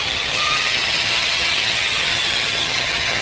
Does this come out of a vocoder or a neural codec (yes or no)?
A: yes